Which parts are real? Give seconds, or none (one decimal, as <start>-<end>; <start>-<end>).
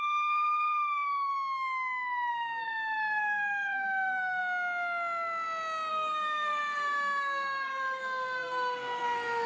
1.3-2.3; 4.4-5.9